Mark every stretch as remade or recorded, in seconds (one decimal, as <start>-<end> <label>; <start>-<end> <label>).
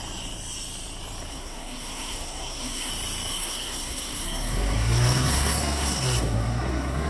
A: 0.0-1.3 recorded; 1.3-2.9 remade; 2.9-3.3 recorded; 3.3-7.1 remade